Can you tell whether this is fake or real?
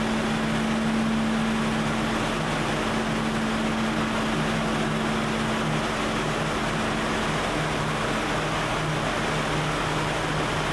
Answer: real